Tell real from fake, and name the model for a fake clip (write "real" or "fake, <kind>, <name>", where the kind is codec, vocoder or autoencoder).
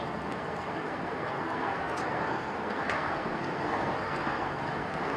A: fake, codec, SNAC